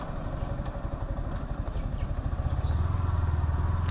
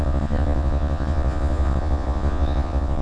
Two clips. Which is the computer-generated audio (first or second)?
second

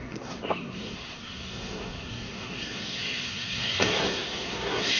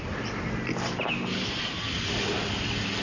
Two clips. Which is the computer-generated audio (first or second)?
first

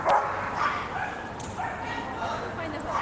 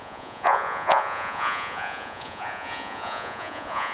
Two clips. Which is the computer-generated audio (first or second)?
second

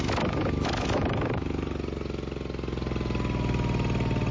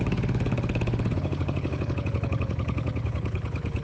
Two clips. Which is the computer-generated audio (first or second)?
second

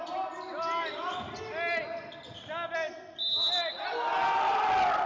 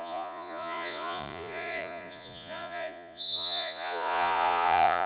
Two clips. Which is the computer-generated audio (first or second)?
second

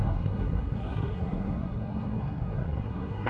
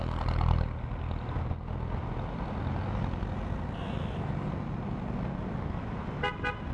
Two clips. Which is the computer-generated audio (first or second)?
first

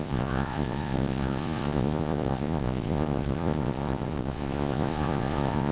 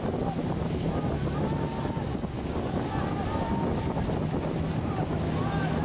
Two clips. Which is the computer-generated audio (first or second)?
first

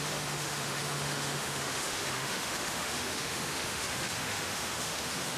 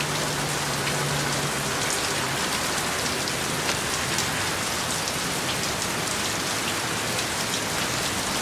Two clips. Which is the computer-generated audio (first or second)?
first